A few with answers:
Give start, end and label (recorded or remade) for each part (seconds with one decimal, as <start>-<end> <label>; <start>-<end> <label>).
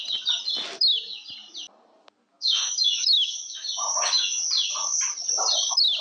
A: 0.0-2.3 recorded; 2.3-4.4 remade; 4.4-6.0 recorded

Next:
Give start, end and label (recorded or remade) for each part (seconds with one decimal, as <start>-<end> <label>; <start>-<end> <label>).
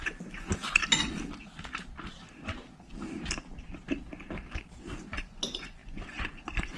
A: 0.0-0.8 remade; 0.8-4.8 recorded; 4.8-6.8 remade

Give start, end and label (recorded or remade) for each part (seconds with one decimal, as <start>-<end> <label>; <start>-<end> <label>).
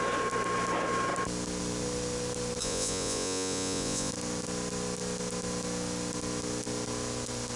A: 0.0-2.6 recorded; 2.6-4.1 remade; 4.1-7.6 recorded